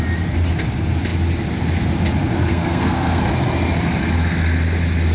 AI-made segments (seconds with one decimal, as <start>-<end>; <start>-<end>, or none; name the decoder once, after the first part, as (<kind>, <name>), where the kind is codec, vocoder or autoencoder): 2.5-3.3 (codec, SNAC)